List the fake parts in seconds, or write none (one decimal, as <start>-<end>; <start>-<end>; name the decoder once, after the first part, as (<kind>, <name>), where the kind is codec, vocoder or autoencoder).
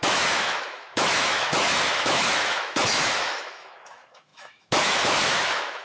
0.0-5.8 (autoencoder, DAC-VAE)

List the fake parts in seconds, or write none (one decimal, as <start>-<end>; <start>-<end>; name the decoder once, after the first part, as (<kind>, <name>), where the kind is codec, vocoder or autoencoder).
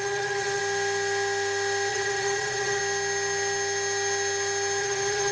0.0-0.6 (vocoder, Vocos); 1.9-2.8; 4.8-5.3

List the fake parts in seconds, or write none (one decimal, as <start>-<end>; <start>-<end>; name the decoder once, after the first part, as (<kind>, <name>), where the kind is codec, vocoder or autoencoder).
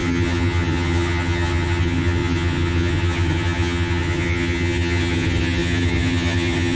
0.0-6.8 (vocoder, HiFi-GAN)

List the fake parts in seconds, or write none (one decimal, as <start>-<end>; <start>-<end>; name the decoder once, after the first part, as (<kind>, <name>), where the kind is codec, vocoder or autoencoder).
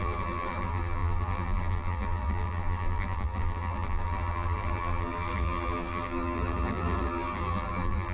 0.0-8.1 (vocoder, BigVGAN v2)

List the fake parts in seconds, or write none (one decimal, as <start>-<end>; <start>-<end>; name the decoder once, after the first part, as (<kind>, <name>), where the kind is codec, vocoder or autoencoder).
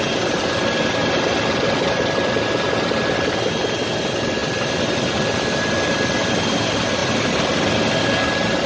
none